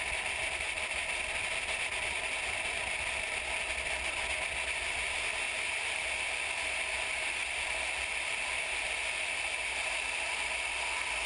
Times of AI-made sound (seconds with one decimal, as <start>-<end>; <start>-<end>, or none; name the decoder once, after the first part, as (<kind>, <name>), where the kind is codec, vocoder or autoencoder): none